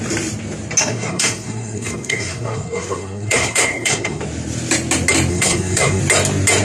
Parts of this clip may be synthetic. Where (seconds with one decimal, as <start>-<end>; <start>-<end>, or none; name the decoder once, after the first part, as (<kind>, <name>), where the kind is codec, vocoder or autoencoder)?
0.8-4.2 (codec, SNAC); 5.3-6.0